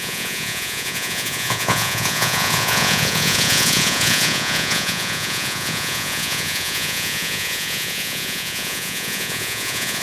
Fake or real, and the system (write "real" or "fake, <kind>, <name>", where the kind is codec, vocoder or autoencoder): fake, vocoder, Vocos